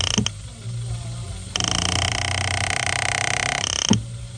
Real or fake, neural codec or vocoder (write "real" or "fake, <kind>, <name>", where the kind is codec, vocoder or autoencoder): real